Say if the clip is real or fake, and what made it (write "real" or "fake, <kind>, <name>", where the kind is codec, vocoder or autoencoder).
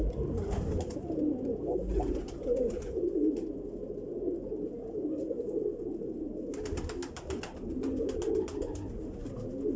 real